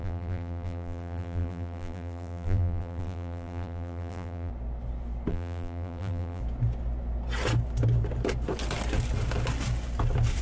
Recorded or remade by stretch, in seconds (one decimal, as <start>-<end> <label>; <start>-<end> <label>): 0.0-4.5 remade; 4.5-5.3 recorded; 5.3-6.4 remade; 6.4-10.4 recorded